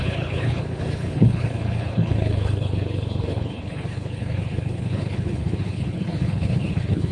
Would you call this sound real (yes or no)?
no